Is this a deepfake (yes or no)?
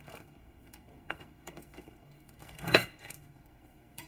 yes